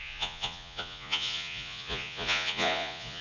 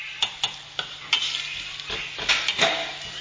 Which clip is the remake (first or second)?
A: first